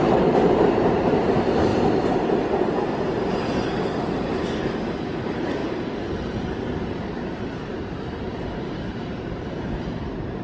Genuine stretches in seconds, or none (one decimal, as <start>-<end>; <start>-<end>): 1.7-4.0